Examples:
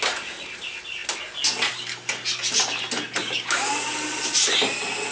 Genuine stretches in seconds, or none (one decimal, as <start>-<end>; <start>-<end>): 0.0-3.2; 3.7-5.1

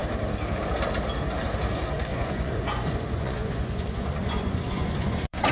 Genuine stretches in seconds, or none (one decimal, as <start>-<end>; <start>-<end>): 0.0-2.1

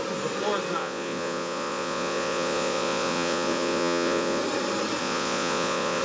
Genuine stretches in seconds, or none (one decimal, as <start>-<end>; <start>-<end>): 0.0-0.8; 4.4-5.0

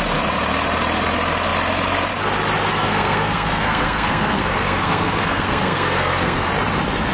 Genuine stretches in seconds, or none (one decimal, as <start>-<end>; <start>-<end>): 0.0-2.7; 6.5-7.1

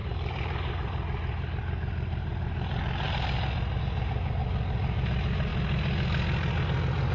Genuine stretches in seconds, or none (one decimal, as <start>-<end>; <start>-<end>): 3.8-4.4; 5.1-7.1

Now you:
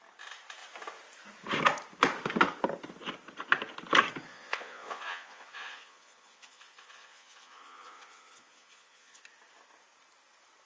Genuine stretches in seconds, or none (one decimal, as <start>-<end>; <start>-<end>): 0.0-4.3; 9.2-10.7